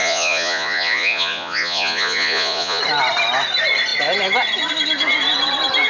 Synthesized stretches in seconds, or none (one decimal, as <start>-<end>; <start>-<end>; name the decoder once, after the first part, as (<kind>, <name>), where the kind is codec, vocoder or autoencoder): 0.0-2.8 (vocoder, Vocos)